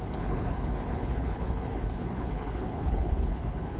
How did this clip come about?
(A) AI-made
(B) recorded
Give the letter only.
A